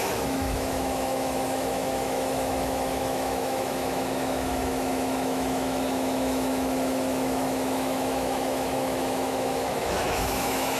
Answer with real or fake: fake